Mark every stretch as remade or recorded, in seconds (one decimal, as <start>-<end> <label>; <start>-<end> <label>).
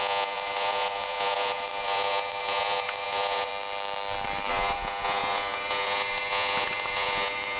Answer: 0.0-3.5 remade; 3.5-4.5 recorded; 4.5-7.6 remade